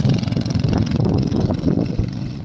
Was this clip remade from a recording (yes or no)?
yes